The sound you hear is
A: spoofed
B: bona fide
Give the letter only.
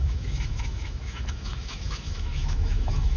A